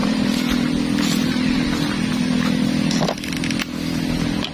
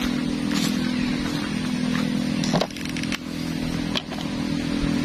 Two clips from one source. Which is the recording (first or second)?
second